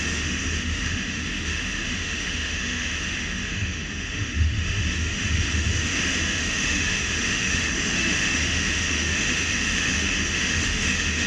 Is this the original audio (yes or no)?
no